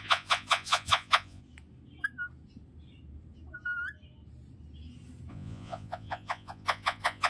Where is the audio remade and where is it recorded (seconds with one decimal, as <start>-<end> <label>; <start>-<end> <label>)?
0.0-1.4 remade; 1.4-5.3 recorded; 5.3-7.3 remade